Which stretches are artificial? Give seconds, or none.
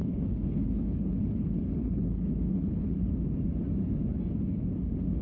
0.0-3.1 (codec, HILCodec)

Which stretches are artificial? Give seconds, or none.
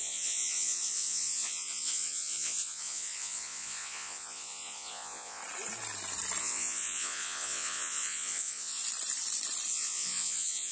0.0-5.4 (vocoder, Vocos); 6.4-8.8; 9.7-10.7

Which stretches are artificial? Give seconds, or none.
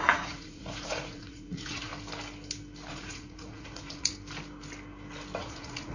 0.0-1.9 (vocoder, Vocos); 2.9-4.1; 5.4-5.9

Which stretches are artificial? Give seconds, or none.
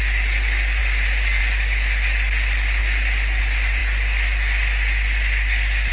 none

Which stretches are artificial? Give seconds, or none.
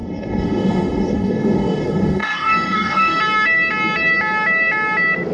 0.0-3.2 (codec, DAC)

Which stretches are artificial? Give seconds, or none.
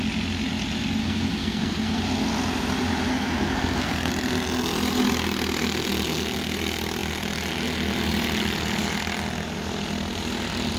1.0-2.0 (codec, SNAC); 3.1-4.1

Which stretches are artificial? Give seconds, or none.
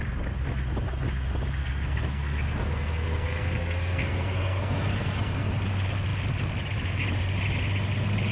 1.6-5.5 (codec, SNAC)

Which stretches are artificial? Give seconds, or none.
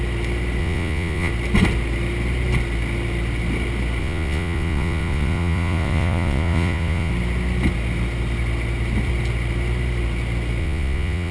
0.6-1.3 (vocoder, Vocos); 4.0-7.1; 10.6-11.3